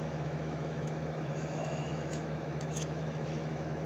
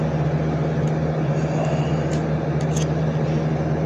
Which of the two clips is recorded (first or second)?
second